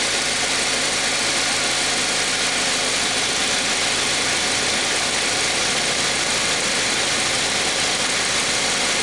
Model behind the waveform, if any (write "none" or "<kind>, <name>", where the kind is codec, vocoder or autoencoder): none